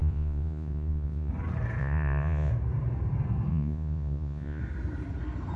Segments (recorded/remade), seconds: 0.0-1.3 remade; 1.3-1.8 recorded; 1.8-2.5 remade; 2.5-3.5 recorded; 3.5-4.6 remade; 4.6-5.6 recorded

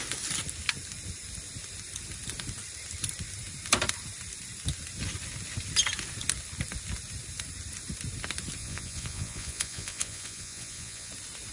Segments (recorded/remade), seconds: 0.0-8.6 recorded; 8.6-11.1 remade; 11.1-11.5 recorded

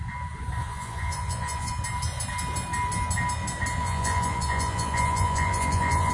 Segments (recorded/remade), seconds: 0.0-0.6 recorded; 0.6-1.7 remade; 1.7-3.8 recorded; 3.8-6.1 remade

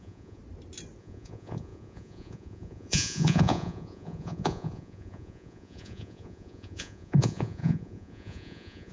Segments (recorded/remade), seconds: 0.0-0.4 remade; 0.4-1.0 recorded; 1.0-8.9 remade